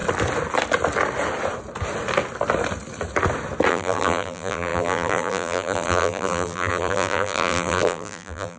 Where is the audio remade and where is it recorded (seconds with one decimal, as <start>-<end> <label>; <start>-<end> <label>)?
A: 0.0-3.7 recorded; 3.7-8.6 remade